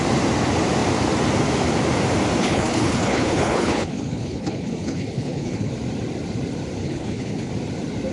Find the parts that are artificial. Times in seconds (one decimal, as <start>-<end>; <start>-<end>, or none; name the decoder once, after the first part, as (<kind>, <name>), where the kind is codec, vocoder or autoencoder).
2.4-5.7 (codec, HILCodec); 6.8-7.5